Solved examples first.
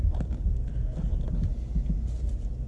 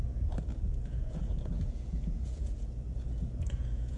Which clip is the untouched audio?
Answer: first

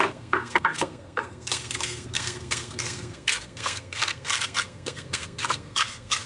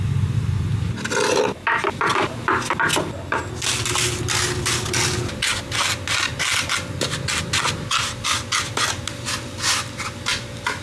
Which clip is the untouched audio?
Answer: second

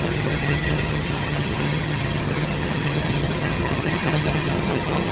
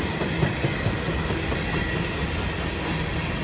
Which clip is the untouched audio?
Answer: second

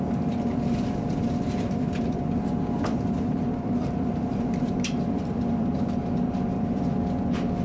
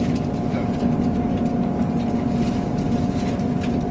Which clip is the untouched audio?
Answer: second